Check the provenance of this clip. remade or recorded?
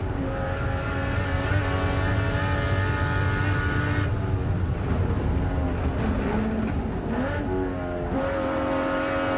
recorded